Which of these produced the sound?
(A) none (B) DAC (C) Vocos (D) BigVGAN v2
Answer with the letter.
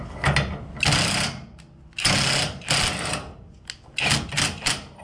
A